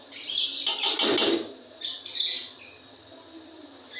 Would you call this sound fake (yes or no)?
no